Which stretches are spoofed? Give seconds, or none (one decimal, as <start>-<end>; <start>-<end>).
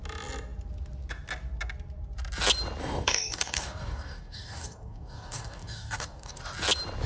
2.8-6.4